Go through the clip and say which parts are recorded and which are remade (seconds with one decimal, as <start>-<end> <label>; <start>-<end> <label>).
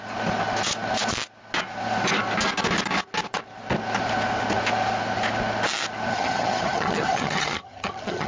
0.0-6.1 recorded; 6.1-8.3 remade